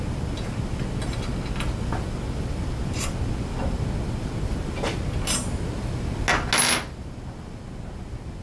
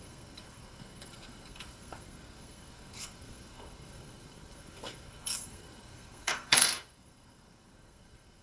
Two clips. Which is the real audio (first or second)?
first